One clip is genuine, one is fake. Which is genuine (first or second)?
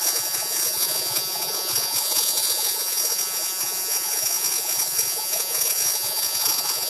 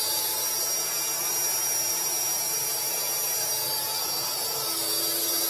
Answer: second